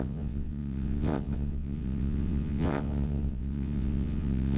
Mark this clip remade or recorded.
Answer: remade